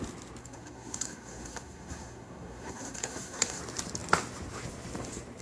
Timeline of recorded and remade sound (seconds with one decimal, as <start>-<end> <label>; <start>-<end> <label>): 0.0-0.4 recorded; 0.4-3.6 remade; 3.6-5.4 recorded

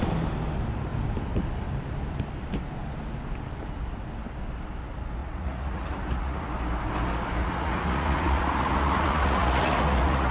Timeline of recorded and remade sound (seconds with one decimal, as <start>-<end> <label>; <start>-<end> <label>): 0.0-5.2 recorded; 5.2-6.5 remade; 6.5-7.4 recorded; 7.4-10.3 remade

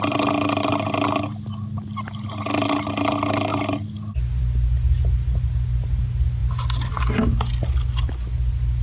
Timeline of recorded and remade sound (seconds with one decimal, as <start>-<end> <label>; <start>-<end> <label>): 0.0-8.8 recorded

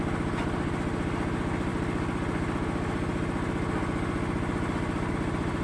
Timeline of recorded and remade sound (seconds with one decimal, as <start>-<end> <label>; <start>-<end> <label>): 0.0-5.6 recorded

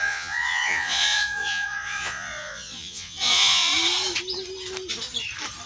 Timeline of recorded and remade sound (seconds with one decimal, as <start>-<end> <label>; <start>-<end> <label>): 0.0-3.7 remade; 3.7-5.7 recorded

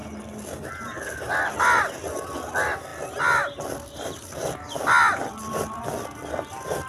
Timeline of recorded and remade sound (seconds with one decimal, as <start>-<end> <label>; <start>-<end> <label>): 0.0-6.9 recorded